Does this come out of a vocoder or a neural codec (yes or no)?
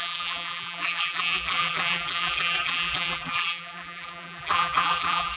yes